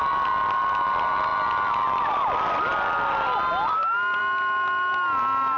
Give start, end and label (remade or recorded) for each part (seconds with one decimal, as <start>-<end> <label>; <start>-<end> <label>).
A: 0.0-5.6 recorded